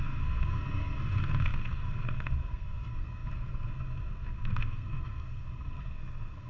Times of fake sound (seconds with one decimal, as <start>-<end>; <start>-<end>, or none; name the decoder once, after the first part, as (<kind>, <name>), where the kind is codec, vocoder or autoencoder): 0.0-6.5 (codec, SNAC)